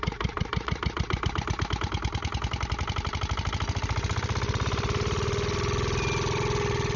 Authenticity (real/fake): real